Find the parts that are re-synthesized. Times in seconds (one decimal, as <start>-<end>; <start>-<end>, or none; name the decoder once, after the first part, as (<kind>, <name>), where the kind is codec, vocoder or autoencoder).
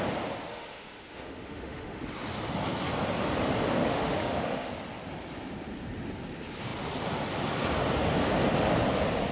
0.5-2.0 (autoencoder, DAC-VAE); 3.8-4.7